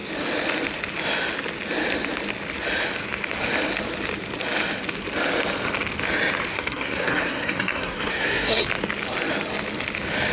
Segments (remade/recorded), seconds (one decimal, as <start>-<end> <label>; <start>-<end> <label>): 0.0-6.5 recorded; 6.5-8.6 remade; 8.6-10.3 recorded